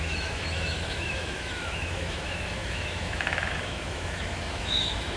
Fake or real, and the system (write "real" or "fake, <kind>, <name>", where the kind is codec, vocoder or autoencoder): fake, autoencoder, DAC-VAE